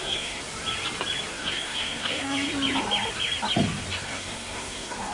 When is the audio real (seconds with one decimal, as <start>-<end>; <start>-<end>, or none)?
0.4-1.3; 2.5-3.9